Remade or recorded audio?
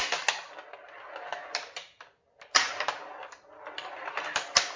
recorded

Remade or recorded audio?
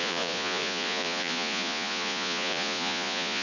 remade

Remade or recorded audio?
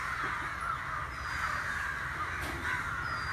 recorded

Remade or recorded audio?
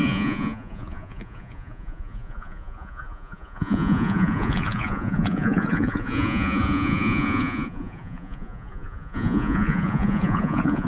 remade